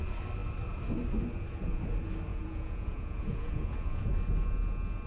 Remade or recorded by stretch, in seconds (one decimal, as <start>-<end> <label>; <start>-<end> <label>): 0.0-2.3 recorded; 2.3-4.1 remade; 4.1-5.1 recorded